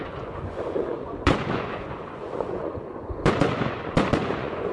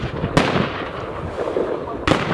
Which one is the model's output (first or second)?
first